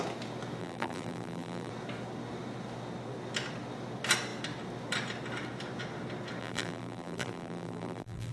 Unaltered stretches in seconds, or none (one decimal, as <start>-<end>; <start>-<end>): 0.0-0.6; 1.7-6.4